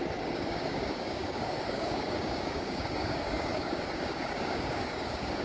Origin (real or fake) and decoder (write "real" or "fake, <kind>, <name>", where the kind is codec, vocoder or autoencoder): fake, codec, DAC